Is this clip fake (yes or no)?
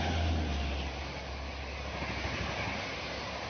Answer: no